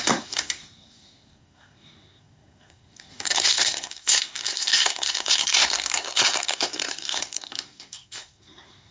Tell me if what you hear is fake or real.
fake